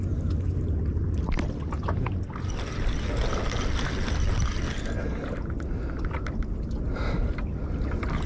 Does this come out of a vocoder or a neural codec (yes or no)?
no